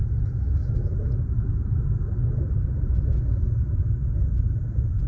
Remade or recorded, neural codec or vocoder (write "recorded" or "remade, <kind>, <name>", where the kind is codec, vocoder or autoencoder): recorded